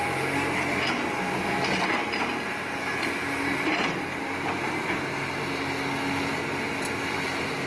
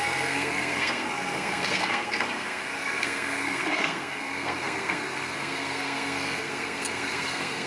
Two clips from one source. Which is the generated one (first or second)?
second